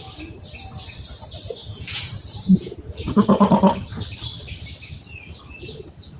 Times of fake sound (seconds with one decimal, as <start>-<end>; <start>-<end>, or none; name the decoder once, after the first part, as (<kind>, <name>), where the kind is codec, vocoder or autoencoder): 1.6-3.5 (vocoder, Vocos)